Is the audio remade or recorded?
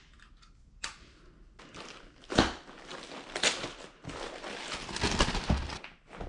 recorded